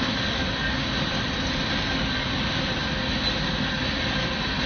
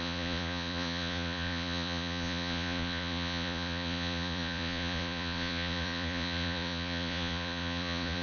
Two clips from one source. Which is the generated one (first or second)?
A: second